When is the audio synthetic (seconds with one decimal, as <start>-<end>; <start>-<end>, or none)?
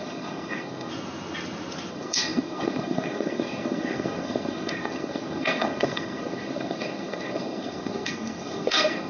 0.0-0.9; 1.9-9.1